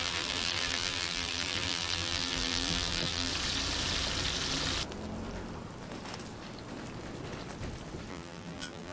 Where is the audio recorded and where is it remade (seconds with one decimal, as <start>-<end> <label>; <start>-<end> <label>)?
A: 0.0-3.3 remade; 3.3-8.1 recorded; 8.1-8.9 remade